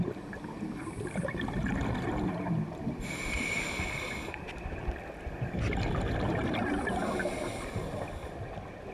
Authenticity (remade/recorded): recorded